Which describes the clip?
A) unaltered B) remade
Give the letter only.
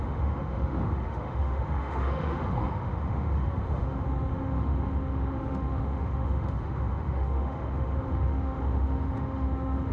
B